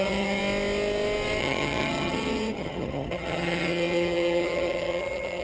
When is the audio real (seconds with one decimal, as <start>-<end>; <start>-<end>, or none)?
0.4-1.4

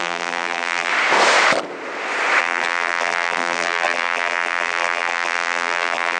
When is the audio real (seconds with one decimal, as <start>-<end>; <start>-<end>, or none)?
0.9-2.4

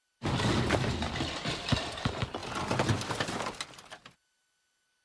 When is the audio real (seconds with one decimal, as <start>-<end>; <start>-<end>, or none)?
0.0-5.0

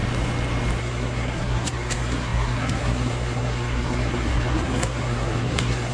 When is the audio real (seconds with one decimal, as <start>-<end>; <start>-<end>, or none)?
0.0-0.8

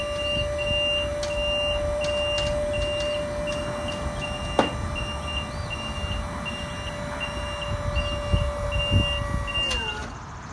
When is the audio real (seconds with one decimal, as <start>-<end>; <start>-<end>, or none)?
0.0-10.5

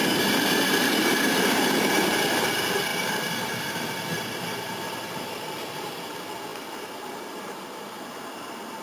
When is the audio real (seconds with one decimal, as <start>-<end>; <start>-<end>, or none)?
2.5-2.9; 6.0-6.5